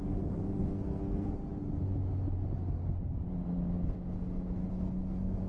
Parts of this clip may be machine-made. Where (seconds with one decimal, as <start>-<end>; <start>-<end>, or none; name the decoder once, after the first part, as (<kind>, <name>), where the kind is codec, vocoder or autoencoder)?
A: 0.0-1.4 (codec, SNAC); 4.7-5.5